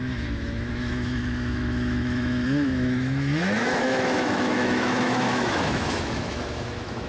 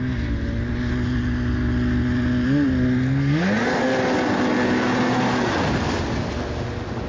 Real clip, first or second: second